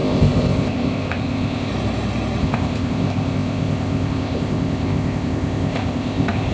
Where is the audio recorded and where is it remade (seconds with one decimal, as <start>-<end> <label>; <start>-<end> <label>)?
0.0-1.7 remade; 1.7-2.4 recorded; 2.4-6.5 remade